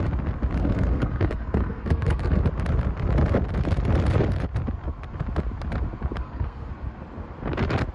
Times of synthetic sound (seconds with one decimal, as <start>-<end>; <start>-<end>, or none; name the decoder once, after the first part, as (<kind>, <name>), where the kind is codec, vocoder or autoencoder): 0.6-2.4 (codec, SNAC); 6.2-6.7